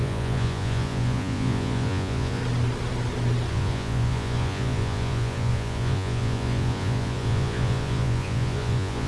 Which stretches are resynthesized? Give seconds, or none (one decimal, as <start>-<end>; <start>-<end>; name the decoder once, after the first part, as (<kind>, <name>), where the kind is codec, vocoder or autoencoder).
0.0-2.4 (vocoder, Vocos); 3.5-9.1